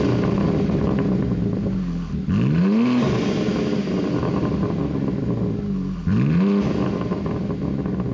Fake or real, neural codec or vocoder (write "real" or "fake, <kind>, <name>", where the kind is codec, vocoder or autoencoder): real